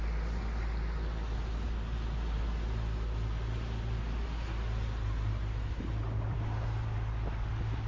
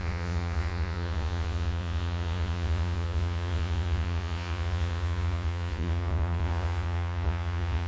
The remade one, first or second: second